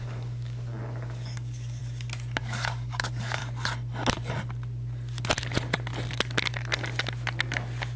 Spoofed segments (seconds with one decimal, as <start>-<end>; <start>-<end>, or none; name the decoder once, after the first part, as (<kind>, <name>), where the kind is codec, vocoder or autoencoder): 0.0-1.8 (codec, DAC); 2.4-3.4